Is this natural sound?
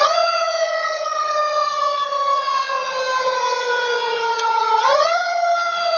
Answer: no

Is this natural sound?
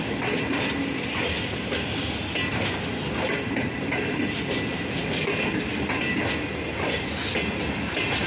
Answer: yes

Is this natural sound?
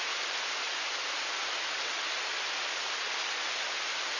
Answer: yes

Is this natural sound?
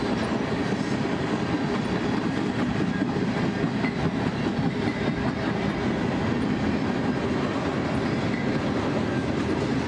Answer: yes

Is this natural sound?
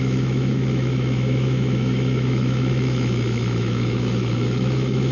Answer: no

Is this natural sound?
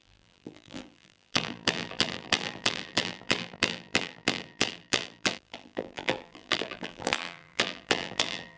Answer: no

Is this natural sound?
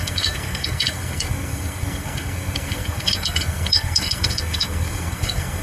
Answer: no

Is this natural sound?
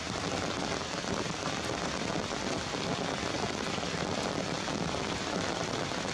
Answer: yes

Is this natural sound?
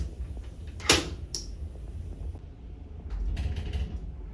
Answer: yes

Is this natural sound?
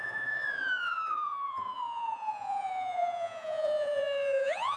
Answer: no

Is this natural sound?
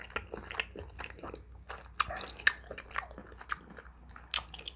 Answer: yes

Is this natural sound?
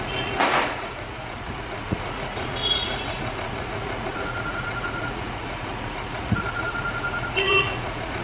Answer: no